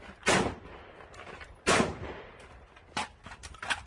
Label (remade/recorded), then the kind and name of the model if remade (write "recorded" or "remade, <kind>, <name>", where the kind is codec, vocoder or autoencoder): recorded